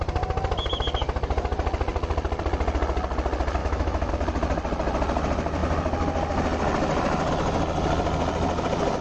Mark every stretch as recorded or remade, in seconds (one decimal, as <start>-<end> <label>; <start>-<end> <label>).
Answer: 0.0-3.6 recorded; 3.6-4.1 remade; 4.1-9.0 recorded